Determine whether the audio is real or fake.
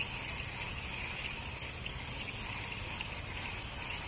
real